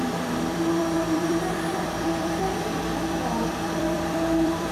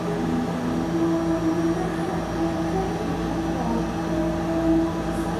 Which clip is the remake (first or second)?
first